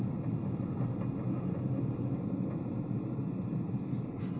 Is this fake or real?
real